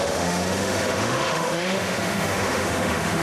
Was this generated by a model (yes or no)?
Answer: yes